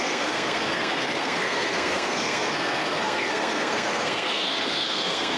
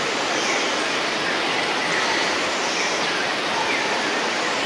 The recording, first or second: second